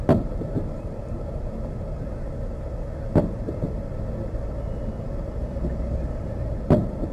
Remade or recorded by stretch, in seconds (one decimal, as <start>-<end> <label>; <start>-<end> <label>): 0.0-7.1 recorded